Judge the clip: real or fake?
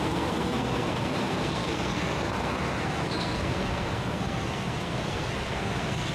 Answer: fake